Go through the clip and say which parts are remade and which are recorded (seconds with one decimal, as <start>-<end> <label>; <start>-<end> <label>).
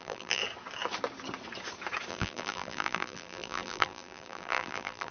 0.0-0.4 remade; 0.4-2.1 recorded; 2.1-5.1 remade